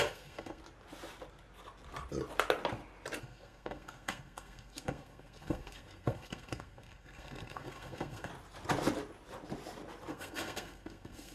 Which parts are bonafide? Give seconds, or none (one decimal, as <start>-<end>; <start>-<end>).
0.6-3.2; 8.3-10.1